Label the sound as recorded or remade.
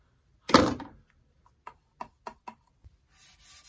recorded